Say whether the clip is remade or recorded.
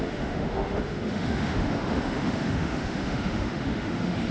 remade